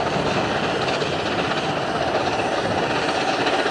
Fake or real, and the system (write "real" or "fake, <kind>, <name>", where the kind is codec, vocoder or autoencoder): real